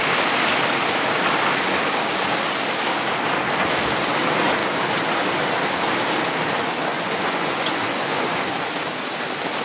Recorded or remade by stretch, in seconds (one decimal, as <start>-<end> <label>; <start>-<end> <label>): 0.0-6.9 recorded; 6.9-8.5 remade; 8.5-9.6 recorded